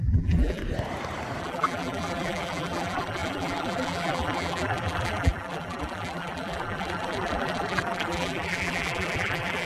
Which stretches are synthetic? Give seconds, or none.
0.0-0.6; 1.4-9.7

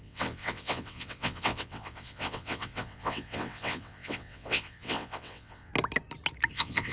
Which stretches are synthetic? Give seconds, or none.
0.0-5.7; 6.5-6.9

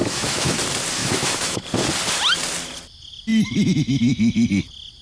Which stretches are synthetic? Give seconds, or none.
0.0-0.6; 1.0-1.6

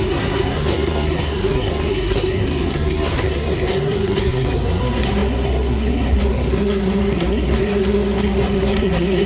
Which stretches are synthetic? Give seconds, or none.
0.0-9.3

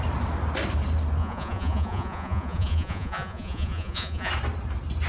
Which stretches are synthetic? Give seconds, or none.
1.2-4.3

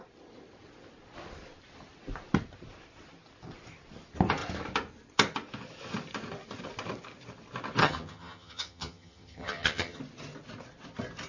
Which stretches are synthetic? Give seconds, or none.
7.8-10.0

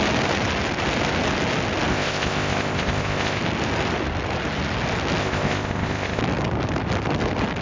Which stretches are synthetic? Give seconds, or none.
1.9-3.4; 5.2-6.2